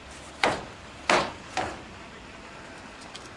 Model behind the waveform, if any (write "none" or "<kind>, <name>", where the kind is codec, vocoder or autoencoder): none